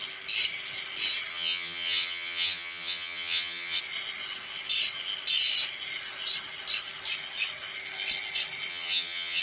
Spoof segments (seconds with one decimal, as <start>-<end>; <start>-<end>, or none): 1.3-3.8; 8.7-9.4